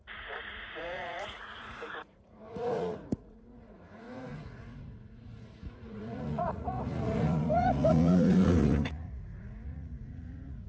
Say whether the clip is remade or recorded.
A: remade